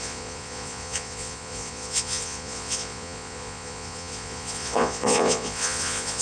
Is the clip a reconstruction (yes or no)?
yes